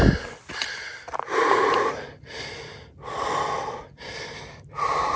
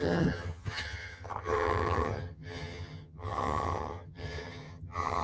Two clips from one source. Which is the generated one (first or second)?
second